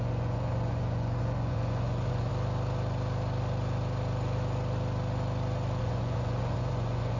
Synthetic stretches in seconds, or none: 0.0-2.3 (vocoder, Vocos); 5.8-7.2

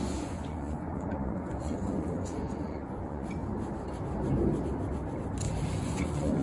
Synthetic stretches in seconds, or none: 0.0-3.4 (vocoder, Vocos); 5.8-6.4

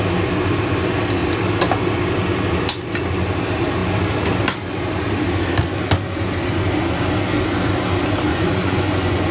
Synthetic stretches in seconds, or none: 8.3-9.3 (vocoder, Vocos)

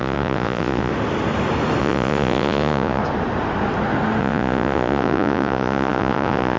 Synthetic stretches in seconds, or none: 0.0-0.9 (vocoder, Vocos); 1.8-3.0; 4.2-6.6

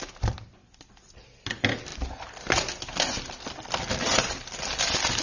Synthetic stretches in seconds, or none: none